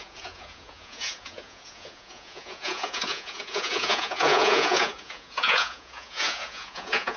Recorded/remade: remade